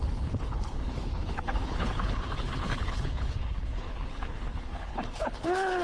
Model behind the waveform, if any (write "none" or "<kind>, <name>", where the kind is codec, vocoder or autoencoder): codec, HILCodec